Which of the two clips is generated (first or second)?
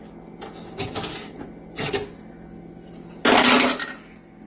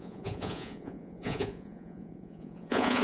second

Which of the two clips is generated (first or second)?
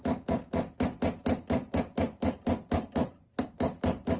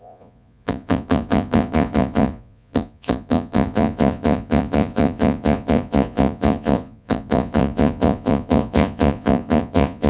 second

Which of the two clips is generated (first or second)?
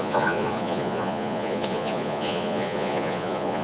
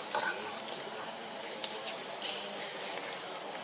first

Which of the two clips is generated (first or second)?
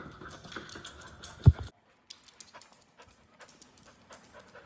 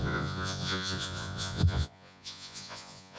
second